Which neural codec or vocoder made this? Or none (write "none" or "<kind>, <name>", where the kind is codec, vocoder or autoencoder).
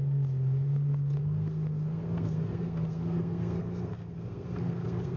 codec, SNAC